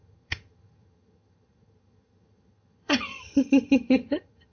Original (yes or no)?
no